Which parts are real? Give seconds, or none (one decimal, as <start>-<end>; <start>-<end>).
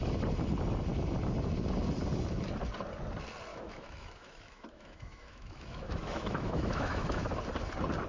0.0-3.5; 7.4-8.1